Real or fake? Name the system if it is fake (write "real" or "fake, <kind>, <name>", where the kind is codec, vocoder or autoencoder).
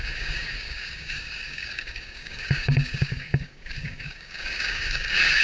fake, codec, DAC